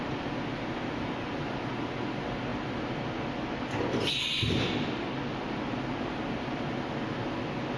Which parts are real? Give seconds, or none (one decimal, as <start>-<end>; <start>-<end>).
0.0-7.8